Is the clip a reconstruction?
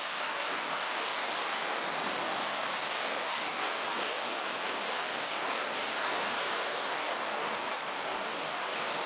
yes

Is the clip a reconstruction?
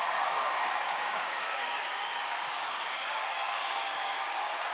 yes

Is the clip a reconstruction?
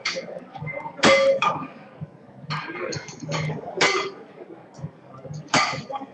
yes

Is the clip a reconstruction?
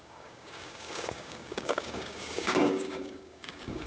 yes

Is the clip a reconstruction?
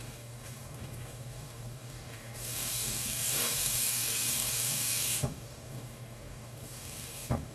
yes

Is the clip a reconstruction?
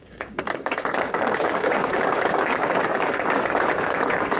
yes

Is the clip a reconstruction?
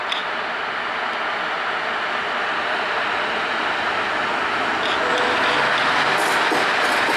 no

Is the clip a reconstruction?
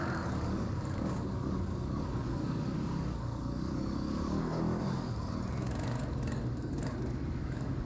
yes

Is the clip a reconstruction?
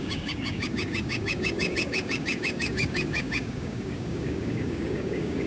yes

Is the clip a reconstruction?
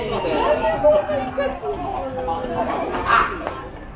no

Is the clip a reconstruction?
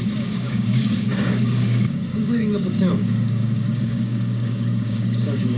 yes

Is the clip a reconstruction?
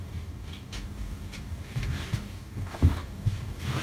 yes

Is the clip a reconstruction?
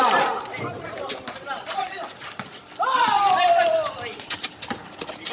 no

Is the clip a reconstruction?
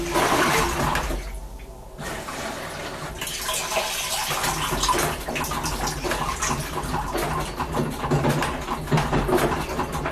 no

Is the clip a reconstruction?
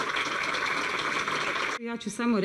no